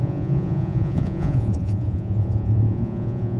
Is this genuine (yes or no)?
no